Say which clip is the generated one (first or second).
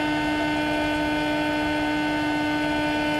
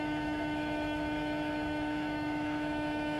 second